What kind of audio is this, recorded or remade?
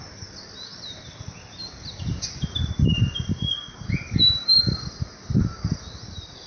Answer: recorded